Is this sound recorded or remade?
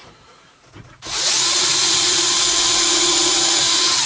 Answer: remade